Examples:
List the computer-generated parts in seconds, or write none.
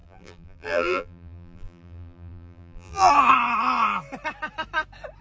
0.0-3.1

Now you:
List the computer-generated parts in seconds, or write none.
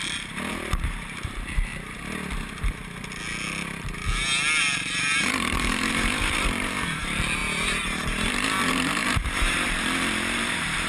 0.0-1.7; 4.6-7.4; 8.7-10.9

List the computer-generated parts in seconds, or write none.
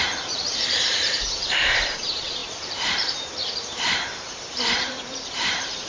0.0-5.9